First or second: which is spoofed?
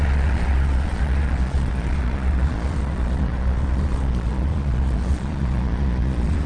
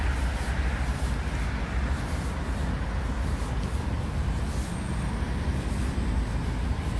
first